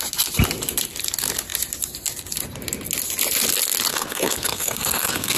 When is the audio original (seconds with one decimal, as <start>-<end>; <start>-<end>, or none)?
0.0-3.9